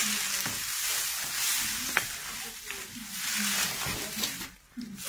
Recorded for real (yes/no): yes